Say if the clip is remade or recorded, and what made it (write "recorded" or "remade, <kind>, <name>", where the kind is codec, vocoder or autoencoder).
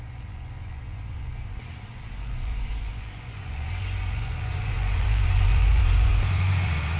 remade, vocoder, Vocos